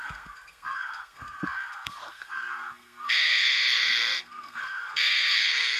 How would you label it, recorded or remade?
remade